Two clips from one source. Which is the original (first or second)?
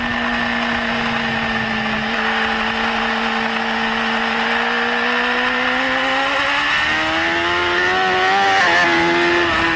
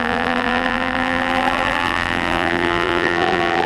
first